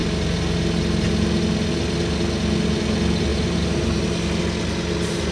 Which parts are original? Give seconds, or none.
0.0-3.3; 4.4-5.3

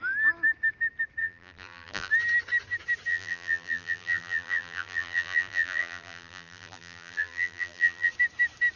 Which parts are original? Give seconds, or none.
0.0-1.2; 2.1-3.1; 8.1-8.8

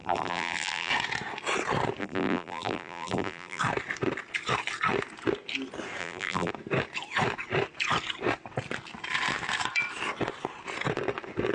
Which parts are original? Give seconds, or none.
0.9-2.0; 3.6-6.0; 6.5-11.5

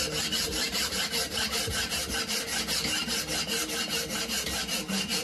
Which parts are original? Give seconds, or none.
0.0-0.5; 2.1-3.6